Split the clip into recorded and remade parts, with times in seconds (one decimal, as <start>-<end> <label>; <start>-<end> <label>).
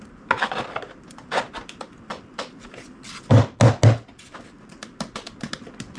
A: 0.0-6.0 recorded